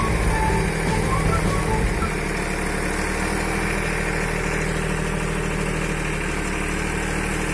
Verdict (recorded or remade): recorded